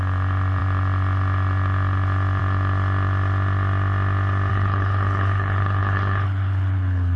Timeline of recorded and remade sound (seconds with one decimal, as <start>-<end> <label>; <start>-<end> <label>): 0.0-4.5 recorded; 4.5-7.2 remade